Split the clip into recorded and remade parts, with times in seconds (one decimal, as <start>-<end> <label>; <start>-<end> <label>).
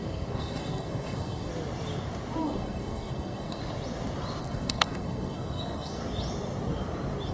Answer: 0.0-1.5 remade; 1.5-2.4 recorded; 2.4-3.6 remade; 3.6-4.4 recorded; 4.4-6.0 remade; 6.0-7.3 recorded